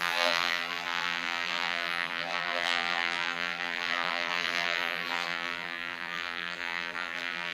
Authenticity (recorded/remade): remade